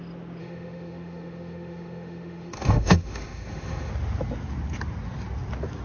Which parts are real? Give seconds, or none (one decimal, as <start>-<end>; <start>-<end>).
0.0-0.4; 3.9-5.8